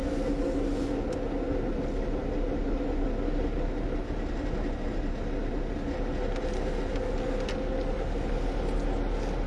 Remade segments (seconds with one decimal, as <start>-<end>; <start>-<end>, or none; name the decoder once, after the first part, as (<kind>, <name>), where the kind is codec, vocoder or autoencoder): none